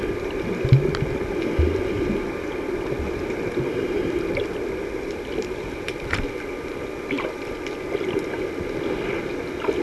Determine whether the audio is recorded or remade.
recorded